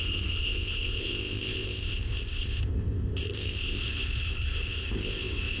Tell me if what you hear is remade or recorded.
remade